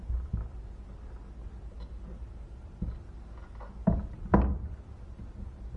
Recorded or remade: recorded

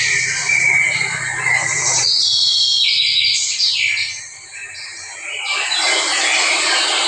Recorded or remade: recorded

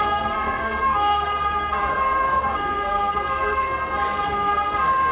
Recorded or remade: remade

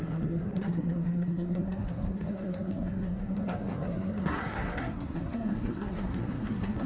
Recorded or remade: remade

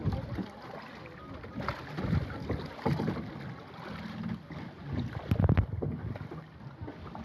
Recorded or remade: recorded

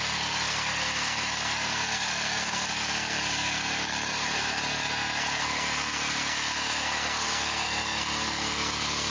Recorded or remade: remade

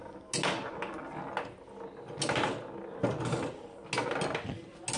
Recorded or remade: recorded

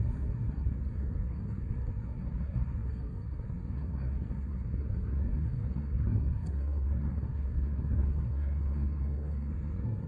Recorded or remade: remade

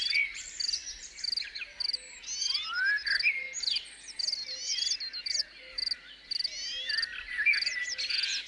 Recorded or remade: recorded